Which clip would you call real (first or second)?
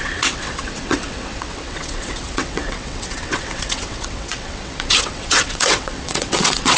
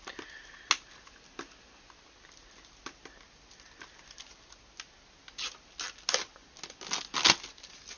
second